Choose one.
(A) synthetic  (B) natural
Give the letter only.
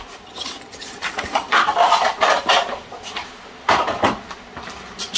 A